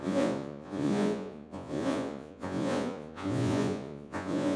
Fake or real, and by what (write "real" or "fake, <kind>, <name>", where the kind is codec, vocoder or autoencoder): fake, vocoder, Vocos